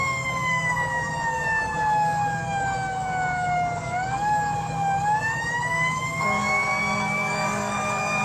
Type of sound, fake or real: fake